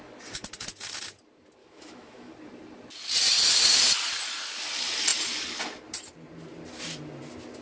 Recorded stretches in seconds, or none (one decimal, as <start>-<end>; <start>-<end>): 0.0-1.6; 2.3-7.6